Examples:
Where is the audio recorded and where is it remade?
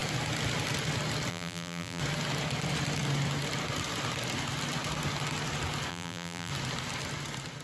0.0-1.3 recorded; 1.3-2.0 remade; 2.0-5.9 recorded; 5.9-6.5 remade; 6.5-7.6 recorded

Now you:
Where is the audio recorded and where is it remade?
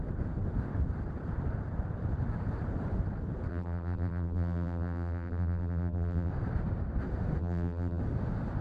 0.0-3.5 recorded; 3.5-6.3 remade; 6.3-7.4 recorded; 7.4-8.0 remade; 8.0-8.6 recorded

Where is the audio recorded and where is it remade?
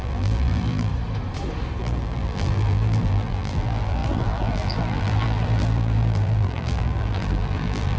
0.0-0.9 remade; 0.9-1.8 recorded; 1.8-8.0 remade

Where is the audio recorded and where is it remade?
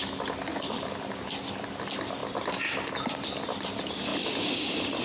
0.0-0.6 recorded; 0.6-2.2 remade; 2.2-3.1 recorded; 3.1-4.1 remade; 4.1-5.0 recorded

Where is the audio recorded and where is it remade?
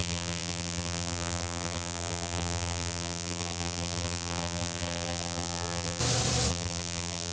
0.0-6.0 remade; 6.0-6.5 recorded; 6.5-7.3 remade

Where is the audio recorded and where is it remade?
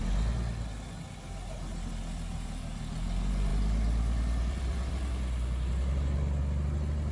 0.0-3.5 recorded; 3.5-4.9 remade; 4.9-7.1 recorded